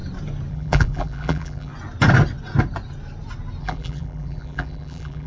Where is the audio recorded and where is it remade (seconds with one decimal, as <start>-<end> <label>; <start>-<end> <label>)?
0.0-0.5 recorded; 0.5-1.7 remade; 1.7-3.6 recorded; 3.6-5.3 remade